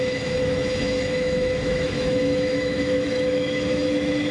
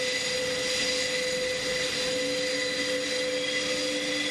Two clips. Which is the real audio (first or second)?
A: second